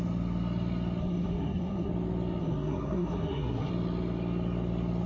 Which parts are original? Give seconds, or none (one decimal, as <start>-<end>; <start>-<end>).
0.0-1.0; 1.9-2.4; 3.7-5.1